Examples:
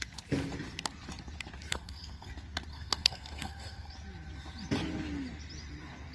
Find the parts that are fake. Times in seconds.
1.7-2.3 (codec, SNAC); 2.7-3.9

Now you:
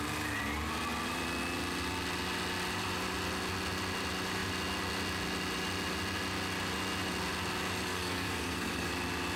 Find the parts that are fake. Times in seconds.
7.9-8.9 (codec, SNAC)

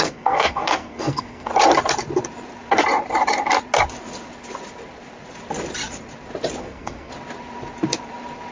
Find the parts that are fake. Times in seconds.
0.0-1.5 (codec, SNAC); 6.6-7.1

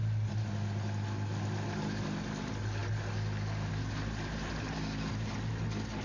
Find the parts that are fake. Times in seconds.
none